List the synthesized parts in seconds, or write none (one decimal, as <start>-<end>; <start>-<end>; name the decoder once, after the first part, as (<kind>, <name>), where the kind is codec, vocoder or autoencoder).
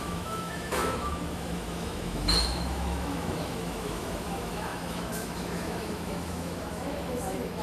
0.0-7.6 (autoencoder, DAC-VAE)